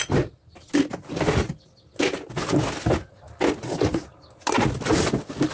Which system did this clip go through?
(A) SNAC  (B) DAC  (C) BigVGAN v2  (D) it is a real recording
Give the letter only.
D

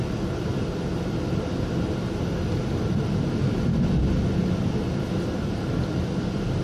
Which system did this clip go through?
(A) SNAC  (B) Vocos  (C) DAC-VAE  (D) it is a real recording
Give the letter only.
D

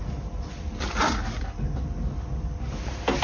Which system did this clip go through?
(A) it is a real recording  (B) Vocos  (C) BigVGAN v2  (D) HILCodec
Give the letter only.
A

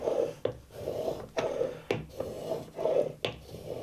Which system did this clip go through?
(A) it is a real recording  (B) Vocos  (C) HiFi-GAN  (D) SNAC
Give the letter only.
A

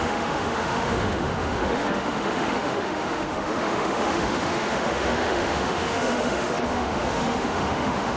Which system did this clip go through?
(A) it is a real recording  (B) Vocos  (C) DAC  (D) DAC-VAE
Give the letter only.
D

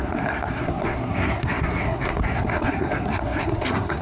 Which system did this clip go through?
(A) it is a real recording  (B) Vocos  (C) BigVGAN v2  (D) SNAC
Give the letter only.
D